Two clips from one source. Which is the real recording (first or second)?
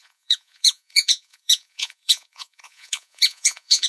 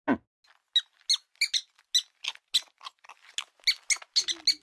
second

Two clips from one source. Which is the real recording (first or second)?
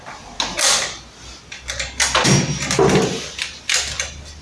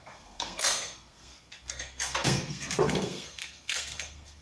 first